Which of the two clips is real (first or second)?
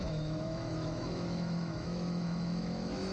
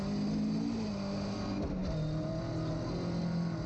second